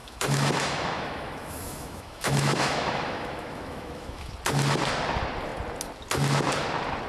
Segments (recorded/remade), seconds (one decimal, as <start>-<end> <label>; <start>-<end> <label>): 0.0-4.3 remade; 4.3-7.1 recorded